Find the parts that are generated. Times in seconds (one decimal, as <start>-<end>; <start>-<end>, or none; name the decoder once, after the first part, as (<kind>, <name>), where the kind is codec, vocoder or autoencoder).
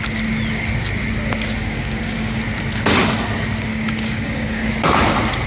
1.6-2.4 (codec, DAC); 3.7-4.7